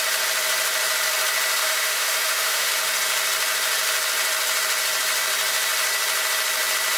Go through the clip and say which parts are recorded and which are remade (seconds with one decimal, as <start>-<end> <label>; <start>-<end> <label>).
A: 0.0-1.6 recorded; 1.6-2.7 remade; 2.7-7.0 recorded